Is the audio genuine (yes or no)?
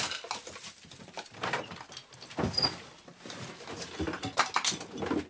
yes